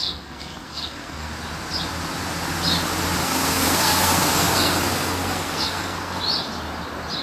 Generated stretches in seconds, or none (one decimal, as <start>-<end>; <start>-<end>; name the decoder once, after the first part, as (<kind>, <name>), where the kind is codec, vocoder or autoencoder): 0.0-1.3 (codec, SNAC); 3.2-6.2

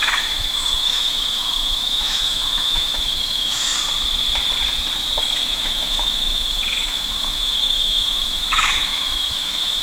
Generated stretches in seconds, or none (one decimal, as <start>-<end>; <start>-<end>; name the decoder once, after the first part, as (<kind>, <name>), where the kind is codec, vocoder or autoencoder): 0.0-3.7 (autoencoder, DAC-VAE); 5.2-9.8